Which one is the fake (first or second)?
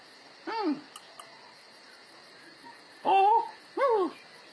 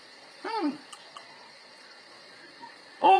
second